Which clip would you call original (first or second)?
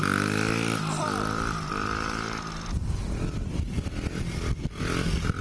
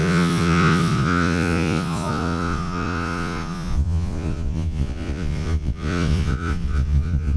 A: first